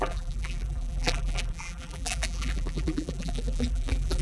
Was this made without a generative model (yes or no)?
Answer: no